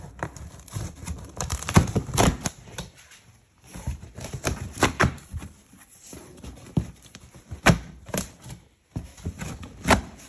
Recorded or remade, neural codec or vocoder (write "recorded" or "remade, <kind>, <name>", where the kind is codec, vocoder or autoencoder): remade, vocoder, BigVGAN v2